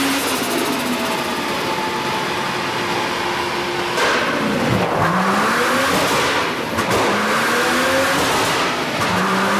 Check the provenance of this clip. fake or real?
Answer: real